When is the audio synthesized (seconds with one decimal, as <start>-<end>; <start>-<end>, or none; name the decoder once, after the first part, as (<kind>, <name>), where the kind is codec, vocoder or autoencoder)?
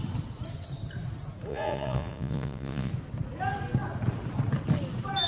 1.5-2.9 (vocoder, Vocos)